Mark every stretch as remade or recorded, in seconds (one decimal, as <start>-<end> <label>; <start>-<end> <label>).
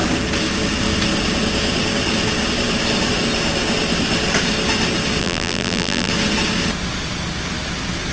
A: 0.0-5.2 recorded; 5.2-6.1 remade; 6.1-8.1 recorded